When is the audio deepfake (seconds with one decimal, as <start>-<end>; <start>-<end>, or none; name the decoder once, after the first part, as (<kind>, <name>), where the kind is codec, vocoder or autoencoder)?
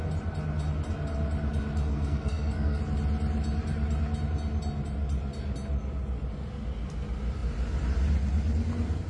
1.9-2.8 (codec, SNAC)